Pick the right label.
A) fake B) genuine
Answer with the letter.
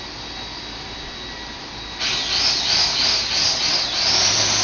B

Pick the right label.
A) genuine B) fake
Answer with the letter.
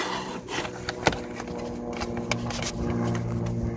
A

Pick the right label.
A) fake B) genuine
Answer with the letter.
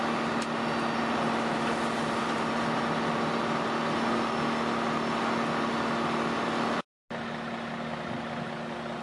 B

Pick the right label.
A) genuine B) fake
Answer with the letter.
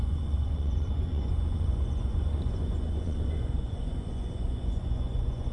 B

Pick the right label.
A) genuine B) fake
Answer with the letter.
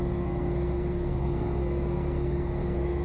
B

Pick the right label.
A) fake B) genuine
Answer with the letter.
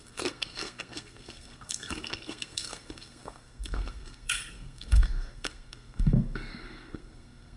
A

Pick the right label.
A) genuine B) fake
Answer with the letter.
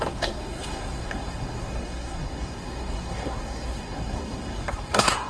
B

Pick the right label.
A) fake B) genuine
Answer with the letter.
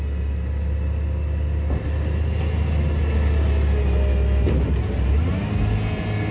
B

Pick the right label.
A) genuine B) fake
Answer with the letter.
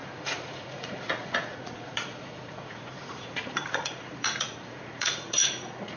B